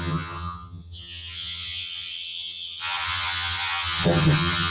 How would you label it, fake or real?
fake